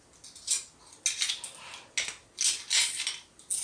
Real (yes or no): yes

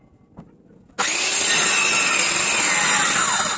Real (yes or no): yes